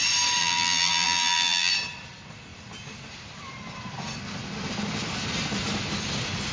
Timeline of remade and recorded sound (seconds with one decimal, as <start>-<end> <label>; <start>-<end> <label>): 0.0-0.4 recorded; 0.4-1.7 remade; 1.7-6.5 recorded